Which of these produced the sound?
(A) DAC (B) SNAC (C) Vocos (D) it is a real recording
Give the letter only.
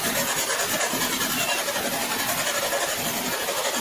D